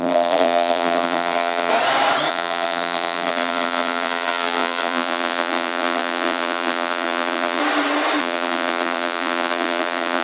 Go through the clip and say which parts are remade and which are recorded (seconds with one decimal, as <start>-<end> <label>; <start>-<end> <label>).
0.0-1.7 remade; 1.7-2.3 recorded; 2.3-7.6 remade; 7.6-8.2 recorded; 8.2-10.2 remade